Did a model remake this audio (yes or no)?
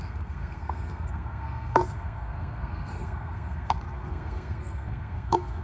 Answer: yes